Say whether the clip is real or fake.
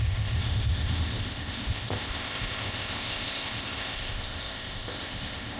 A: fake